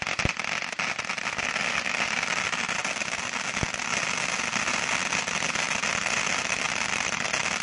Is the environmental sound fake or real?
real